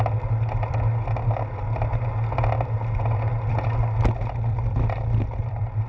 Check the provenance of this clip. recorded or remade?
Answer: recorded